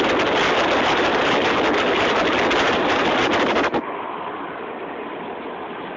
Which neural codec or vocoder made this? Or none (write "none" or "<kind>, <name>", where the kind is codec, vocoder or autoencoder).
none